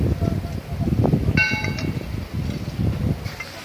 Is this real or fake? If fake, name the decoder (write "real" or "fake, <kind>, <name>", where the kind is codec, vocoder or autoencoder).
real